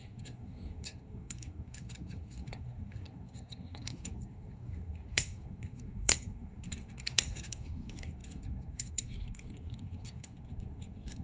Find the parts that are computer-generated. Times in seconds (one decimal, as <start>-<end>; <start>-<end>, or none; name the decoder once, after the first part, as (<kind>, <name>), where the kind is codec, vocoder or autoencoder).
0.0-11.2 (codec, SNAC)